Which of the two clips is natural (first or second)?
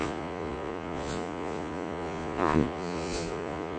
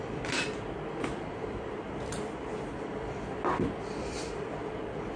second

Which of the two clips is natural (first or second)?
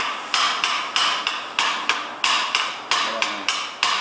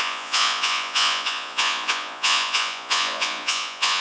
first